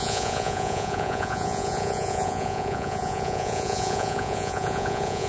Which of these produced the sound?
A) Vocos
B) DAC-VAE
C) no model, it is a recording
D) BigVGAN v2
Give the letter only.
A